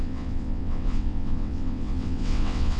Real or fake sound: fake